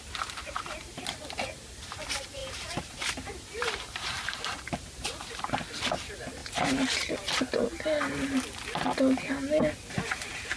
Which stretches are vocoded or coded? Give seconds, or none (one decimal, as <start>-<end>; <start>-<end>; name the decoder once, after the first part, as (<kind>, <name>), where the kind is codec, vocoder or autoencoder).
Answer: 0.4-1.0 (vocoder, BigVGAN v2); 2.4-5.6